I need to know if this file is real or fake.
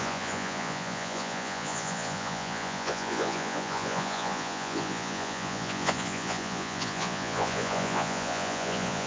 fake